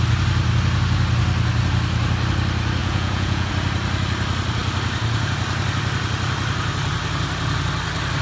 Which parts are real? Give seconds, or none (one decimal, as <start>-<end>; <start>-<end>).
0.0-2.8; 3.5-8.2